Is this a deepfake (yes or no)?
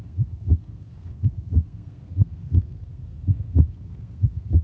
yes